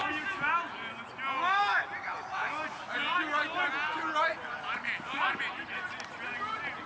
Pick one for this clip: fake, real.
real